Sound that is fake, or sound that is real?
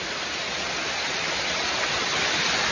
real